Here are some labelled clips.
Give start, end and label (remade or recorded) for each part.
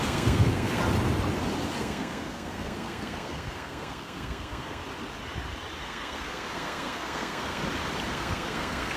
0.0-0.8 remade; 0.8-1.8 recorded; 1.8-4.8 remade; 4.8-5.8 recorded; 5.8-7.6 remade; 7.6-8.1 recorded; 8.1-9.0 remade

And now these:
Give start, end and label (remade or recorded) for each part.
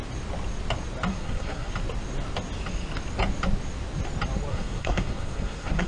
0.0-1.1 recorded; 1.1-1.7 remade; 1.7-4.5 recorded; 4.5-5.9 remade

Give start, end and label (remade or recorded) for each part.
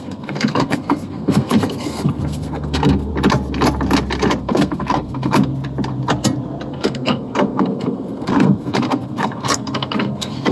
0.0-3.1 remade; 3.1-4.4 recorded; 4.4-5.5 remade; 5.5-6.7 recorded; 6.7-10.5 remade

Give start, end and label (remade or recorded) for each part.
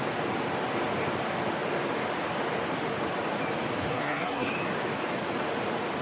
0.0-3.9 recorded; 3.9-4.5 remade; 4.5-6.0 recorded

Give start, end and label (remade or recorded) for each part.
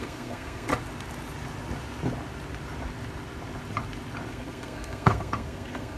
0.0-0.7 remade; 0.7-4.3 recorded; 4.3-6.0 remade